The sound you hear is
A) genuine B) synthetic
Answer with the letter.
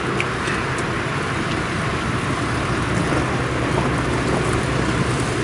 A